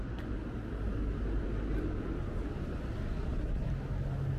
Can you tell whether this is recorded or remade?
recorded